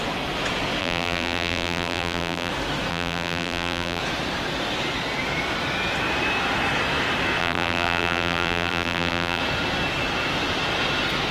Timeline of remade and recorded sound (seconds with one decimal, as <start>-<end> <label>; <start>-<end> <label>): 0.0-0.8 recorded; 0.8-2.5 remade; 2.5-2.9 recorded; 2.9-4.0 remade; 4.0-7.4 recorded; 7.4-9.4 remade; 9.4-11.3 recorded